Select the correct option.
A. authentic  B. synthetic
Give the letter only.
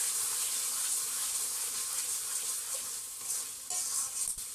A